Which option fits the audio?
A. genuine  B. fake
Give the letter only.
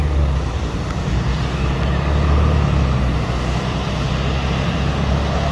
A